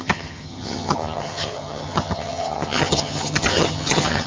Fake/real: fake